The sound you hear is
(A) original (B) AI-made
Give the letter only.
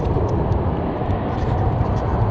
B